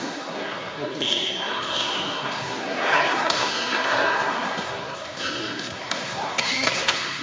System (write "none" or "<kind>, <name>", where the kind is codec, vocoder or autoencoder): codec, SNAC